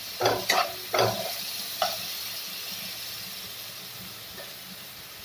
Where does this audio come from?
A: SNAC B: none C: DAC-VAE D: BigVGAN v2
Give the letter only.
B